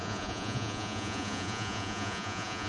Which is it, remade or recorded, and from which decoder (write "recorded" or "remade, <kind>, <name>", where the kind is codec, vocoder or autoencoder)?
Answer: remade, vocoder, Vocos